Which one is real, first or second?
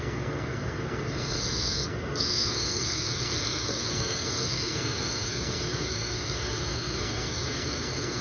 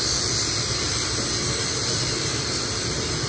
second